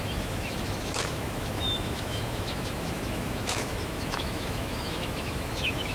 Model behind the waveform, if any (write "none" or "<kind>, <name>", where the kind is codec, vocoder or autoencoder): autoencoder, DAC-VAE